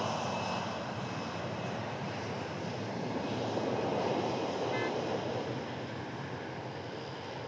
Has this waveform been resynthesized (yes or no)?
no